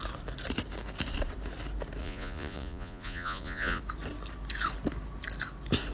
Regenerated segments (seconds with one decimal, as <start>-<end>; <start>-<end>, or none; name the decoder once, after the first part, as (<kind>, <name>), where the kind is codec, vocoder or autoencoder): 2.0-3.8 (vocoder, Vocos)